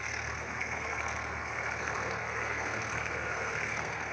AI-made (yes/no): yes